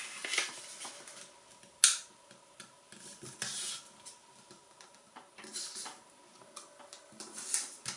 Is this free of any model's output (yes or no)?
yes